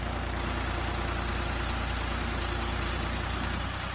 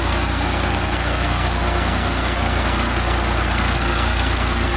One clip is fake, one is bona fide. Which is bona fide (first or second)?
first